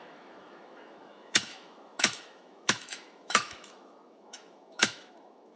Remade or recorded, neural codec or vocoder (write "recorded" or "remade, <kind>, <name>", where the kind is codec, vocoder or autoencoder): remade, autoencoder, DAC-VAE